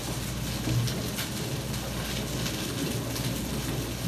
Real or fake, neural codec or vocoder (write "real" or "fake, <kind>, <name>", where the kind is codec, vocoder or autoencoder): real